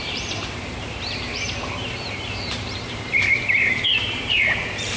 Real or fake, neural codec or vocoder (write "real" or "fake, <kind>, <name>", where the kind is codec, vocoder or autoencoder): fake, vocoder, BigVGAN v2